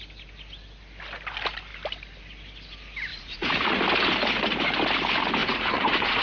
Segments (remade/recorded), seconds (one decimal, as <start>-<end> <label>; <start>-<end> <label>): 0.0-3.1 recorded; 3.1-3.8 remade; 3.8-5.4 recorded; 5.4-6.2 remade